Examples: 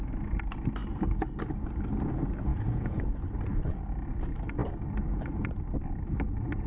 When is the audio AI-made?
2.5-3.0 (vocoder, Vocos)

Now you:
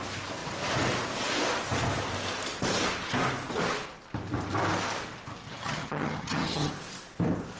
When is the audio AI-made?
5.4-6.7 (vocoder, HiFi-GAN)